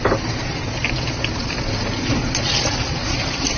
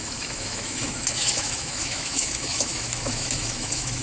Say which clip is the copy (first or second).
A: second